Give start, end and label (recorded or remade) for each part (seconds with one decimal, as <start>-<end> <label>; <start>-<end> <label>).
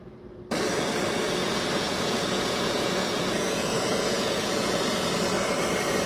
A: 0.0-1.4 recorded; 1.4-5.1 remade; 5.1-6.1 recorded